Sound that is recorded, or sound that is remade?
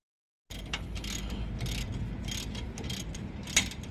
recorded